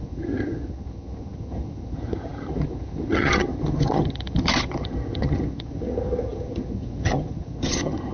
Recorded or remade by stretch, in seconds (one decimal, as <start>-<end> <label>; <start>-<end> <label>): 0.0-8.1 remade